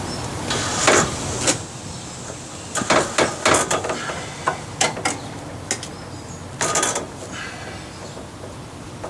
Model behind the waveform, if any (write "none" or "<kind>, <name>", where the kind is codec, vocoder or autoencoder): none